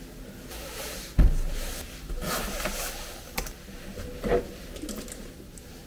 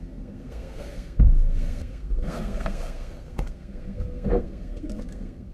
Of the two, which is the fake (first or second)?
second